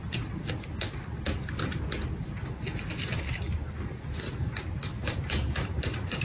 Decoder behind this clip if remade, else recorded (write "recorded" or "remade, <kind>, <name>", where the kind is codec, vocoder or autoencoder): recorded